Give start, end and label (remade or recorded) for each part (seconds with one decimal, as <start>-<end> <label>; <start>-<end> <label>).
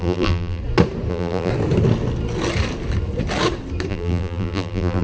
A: 0.0-0.6 remade; 0.6-1.1 recorded; 1.1-1.5 remade; 1.5-3.9 recorded; 3.9-5.0 remade